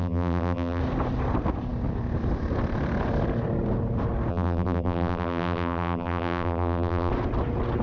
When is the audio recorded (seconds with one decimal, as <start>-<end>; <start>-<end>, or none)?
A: 0.8-4.3; 7.1-7.8